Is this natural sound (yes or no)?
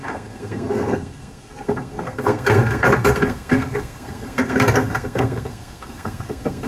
no